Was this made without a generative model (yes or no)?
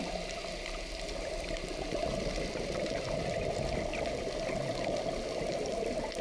no